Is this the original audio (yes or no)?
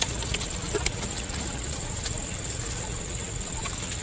no